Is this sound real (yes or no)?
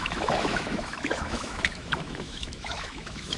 no